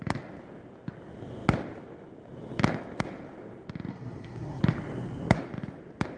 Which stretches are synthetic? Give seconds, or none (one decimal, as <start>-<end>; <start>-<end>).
3.9-4.6